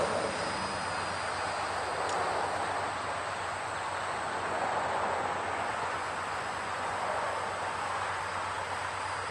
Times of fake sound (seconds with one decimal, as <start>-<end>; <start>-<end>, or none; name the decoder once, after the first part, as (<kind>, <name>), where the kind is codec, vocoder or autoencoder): 3.5-8.2 (vocoder, Vocos)